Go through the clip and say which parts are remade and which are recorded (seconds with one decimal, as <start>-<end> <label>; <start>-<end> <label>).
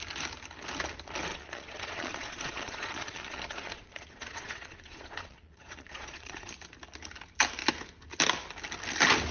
0.0-1.3 recorded; 1.3-6.5 remade; 6.5-9.3 recorded